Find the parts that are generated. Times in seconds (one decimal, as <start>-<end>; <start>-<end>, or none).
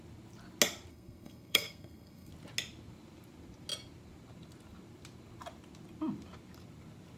0.9-2.3